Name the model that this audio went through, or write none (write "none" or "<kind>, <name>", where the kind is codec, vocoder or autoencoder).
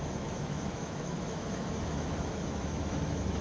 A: autoencoder, DAC-VAE